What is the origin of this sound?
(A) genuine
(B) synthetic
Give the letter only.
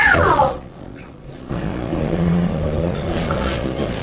B